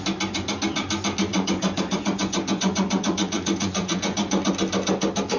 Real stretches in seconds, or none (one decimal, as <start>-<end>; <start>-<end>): 0.0-1.3; 4.5-5.4

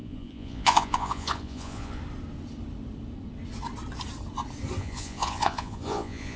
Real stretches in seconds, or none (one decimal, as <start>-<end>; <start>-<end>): 2.0-4.8

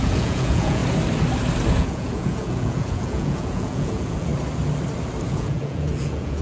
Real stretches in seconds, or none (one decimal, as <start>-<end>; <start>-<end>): 0.8-1.7; 4.3-5.3

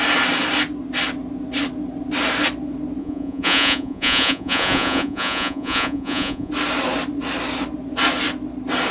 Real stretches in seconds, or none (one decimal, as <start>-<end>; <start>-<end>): 0.0-3.0; 6.5-8.9

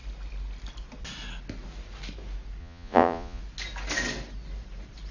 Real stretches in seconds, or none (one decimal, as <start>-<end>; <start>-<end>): 0.0-2.6; 3.4-5.1